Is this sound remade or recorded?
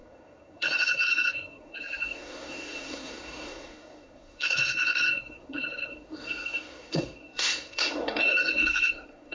remade